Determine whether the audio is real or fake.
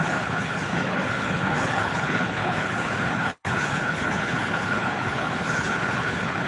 fake